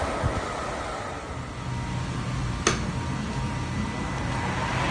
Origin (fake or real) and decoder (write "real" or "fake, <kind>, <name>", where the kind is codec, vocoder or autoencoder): real